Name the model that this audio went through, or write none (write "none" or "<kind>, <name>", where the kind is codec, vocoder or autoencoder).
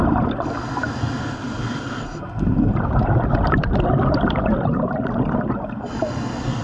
none